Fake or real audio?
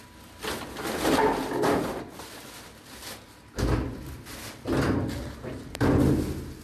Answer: real